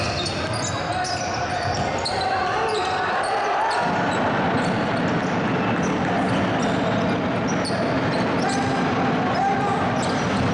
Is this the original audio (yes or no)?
yes